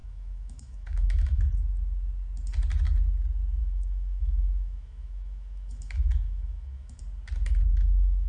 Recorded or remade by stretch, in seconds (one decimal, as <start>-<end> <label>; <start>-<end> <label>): 0.0-1.4 remade; 1.4-3.6 recorded; 3.6-7.0 remade; 7.0-7.7 recorded; 7.7-8.3 remade